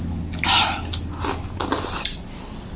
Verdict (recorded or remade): recorded